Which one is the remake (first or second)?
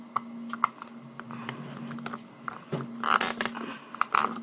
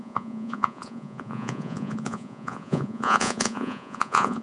second